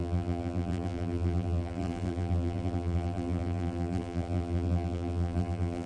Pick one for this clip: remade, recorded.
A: remade